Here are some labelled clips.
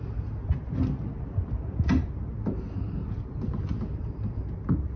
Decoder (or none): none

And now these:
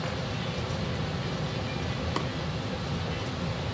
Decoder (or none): none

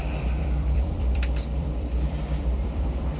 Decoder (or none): vocoder, BigVGAN v2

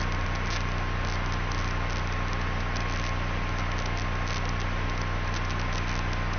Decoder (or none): none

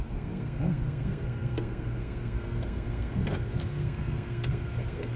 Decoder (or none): codec, SNAC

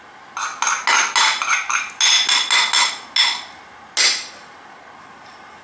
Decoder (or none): none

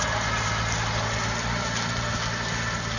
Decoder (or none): none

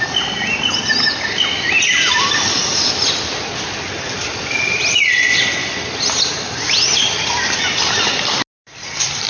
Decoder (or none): none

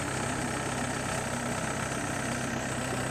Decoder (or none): none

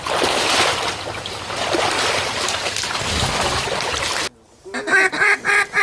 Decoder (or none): none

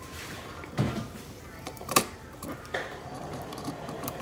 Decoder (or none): vocoder, BigVGAN v2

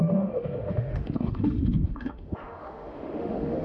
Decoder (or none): autoencoder, DAC-VAE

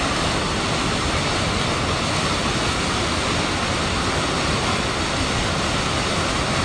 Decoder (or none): none